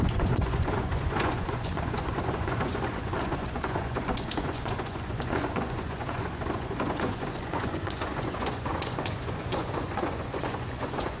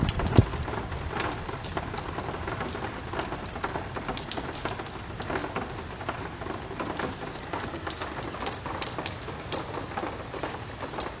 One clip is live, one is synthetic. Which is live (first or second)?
second